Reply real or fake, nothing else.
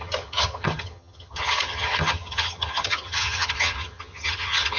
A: fake